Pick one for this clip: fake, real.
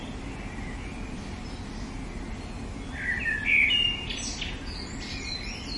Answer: real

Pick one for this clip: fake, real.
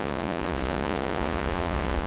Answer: fake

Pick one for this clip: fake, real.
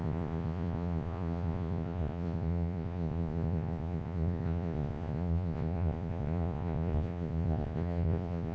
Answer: fake